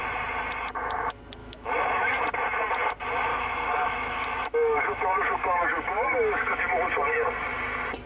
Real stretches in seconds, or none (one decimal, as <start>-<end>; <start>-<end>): 0.0-1.4; 2.2-3.3; 6.6-8.1